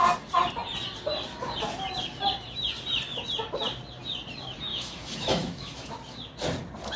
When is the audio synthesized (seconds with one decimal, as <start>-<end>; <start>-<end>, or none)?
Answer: 4.7-5.9